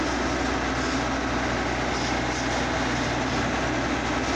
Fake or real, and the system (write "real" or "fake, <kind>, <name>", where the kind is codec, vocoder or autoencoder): real